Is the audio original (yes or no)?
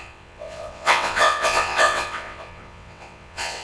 no